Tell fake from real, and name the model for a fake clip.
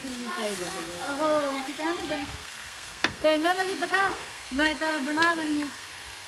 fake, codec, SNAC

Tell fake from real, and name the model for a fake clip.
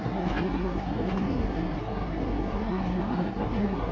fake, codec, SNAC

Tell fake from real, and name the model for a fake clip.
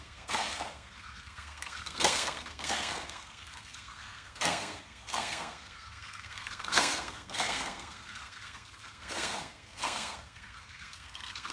fake, codec, SNAC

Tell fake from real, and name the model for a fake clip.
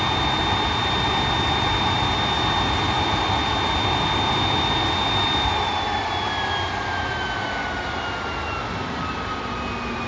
real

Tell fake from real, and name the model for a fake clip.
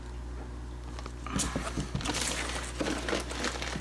real